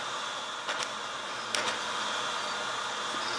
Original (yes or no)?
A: yes